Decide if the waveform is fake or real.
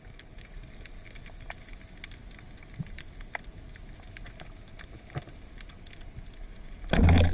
real